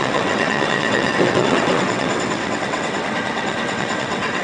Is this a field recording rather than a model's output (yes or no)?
no